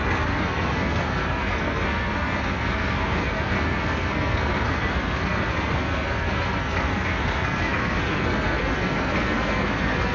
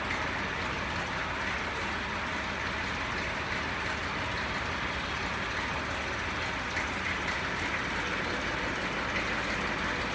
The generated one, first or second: first